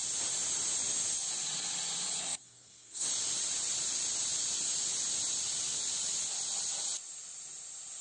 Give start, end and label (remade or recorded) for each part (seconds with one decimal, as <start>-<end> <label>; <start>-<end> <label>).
0.0-2.2 recorded; 2.2-3.1 remade; 3.1-8.0 recorded